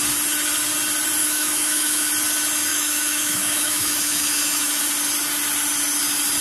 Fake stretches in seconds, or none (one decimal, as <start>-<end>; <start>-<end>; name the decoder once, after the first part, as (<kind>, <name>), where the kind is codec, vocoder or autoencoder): 1.2-2.1 (autoencoder, DAC-VAE); 2.7-4.8